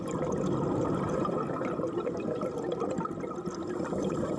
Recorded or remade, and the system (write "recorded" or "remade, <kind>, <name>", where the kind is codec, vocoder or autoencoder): remade, vocoder, BigVGAN v2